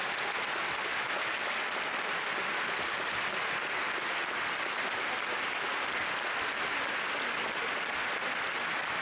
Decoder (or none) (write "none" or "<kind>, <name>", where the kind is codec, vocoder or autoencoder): none